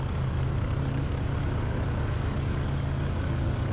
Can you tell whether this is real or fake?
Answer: fake